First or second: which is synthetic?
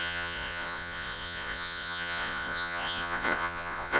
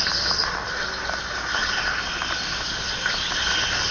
first